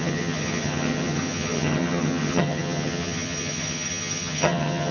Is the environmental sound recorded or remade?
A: remade